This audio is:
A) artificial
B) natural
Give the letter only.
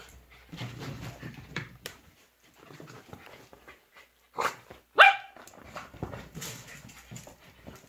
A